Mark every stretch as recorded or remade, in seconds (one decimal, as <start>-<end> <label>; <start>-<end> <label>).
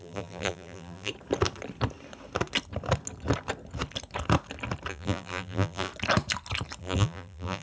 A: 0.0-1.1 remade; 1.1-4.9 recorded; 4.9-5.9 remade; 5.9-6.8 recorded; 6.8-7.6 remade